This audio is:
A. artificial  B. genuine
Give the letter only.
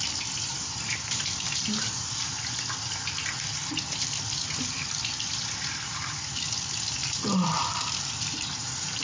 A